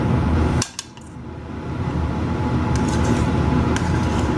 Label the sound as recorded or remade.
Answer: recorded